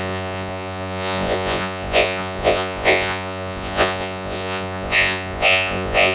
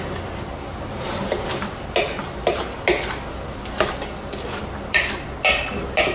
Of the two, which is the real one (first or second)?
second